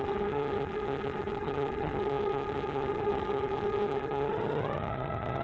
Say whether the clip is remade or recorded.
remade